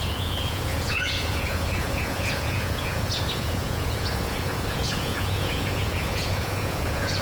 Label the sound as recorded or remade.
remade